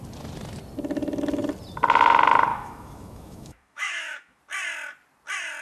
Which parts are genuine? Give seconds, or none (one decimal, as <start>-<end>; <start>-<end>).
0.0-2.5; 4.4-5.6